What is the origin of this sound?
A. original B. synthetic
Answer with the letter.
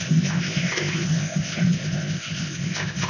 B